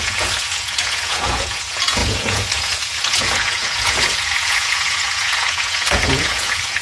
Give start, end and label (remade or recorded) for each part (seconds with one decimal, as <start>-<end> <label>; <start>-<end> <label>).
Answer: 0.0-6.8 remade